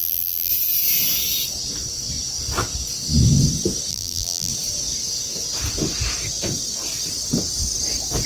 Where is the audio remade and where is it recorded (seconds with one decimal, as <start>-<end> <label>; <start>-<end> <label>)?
0.0-0.5 remade; 0.5-3.9 recorded; 3.9-4.5 remade; 4.5-8.3 recorded